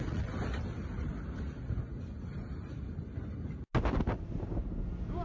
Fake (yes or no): no